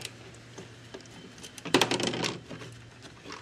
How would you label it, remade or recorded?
recorded